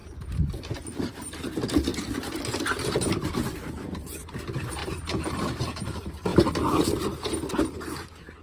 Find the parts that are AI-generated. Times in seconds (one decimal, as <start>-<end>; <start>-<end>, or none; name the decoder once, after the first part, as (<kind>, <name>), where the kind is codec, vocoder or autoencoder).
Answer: 1.2-1.9 (vocoder, BigVGAN v2); 2.9-6.3; 7.6-8.4

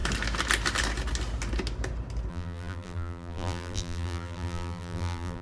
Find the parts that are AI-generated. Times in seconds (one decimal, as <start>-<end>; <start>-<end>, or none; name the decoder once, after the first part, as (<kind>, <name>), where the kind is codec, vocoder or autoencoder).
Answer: 2.3-5.4 (vocoder, BigVGAN v2)

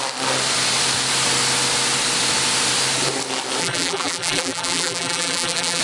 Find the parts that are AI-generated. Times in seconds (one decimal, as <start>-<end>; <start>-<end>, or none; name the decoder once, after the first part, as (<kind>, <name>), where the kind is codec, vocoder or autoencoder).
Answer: 3.6-5.8 (vocoder, BigVGAN v2)

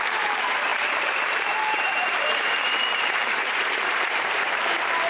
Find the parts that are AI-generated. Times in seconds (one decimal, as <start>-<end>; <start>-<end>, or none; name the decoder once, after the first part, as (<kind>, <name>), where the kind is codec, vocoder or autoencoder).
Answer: 0.0-5.1 (vocoder, BigVGAN v2)

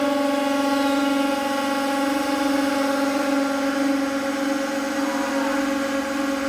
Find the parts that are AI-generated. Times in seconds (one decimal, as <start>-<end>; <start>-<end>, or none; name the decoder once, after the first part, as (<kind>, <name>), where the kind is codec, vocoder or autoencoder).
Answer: none

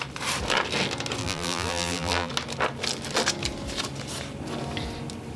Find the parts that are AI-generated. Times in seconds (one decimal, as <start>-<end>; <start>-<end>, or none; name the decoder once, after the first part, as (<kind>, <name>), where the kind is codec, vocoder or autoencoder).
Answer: 1.2-2.3 (vocoder, BigVGAN v2)